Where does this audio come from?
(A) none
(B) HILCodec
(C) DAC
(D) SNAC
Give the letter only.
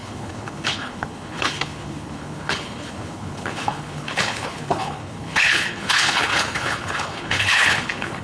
B